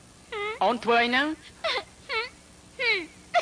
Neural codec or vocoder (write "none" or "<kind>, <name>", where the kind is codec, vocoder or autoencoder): none